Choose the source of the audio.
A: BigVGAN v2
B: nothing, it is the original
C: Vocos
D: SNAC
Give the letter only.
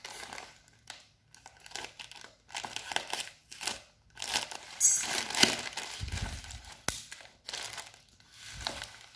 B